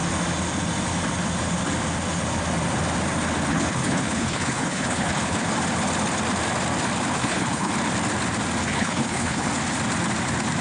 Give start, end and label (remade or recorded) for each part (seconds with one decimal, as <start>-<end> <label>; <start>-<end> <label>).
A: 0.0-3.5 recorded; 3.5-5.5 remade; 5.5-7.2 recorded; 7.2-7.7 remade; 7.7-8.7 recorded; 8.7-9.5 remade; 9.5-10.6 recorded